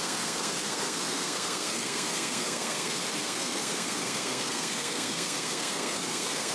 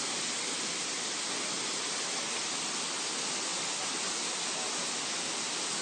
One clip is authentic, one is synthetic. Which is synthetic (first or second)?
first